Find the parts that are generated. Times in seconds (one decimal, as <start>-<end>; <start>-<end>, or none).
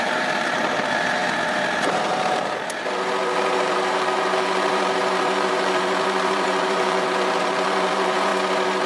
0.0-8.3